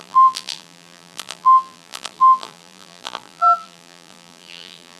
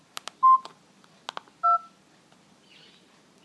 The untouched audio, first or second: second